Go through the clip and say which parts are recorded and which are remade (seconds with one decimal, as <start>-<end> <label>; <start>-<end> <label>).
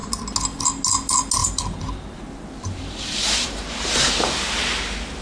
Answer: 0.0-1.4 recorded; 1.4-4.1 remade; 4.1-5.2 recorded